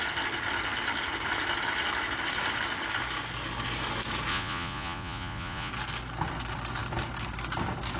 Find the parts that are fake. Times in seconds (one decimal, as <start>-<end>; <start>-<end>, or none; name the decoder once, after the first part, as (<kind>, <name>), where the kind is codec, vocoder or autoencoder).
4.3-5.7 (vocoder, Vocos)